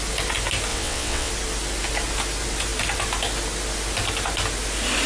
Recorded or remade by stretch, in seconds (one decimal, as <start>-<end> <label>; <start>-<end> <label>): 0.0-0.7 recorded; 0.7-1.3 remade; 1.3-5.1 recorded